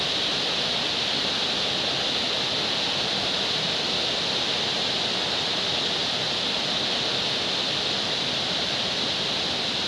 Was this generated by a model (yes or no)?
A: no